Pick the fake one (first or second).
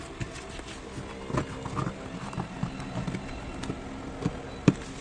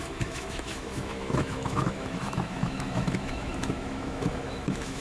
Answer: second